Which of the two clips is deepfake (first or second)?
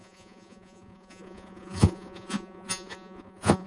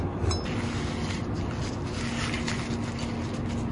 first